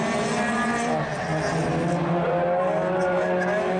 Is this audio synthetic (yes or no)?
no